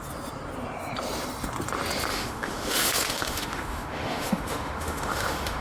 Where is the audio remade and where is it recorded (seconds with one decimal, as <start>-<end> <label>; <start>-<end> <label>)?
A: 0.0-2.1 recorded; 2.1-5.6 remade